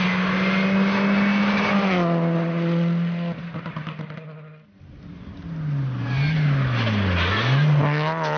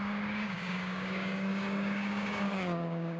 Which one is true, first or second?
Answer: first